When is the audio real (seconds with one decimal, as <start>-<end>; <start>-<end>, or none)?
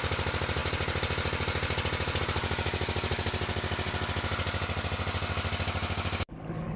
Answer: 0.0-6.8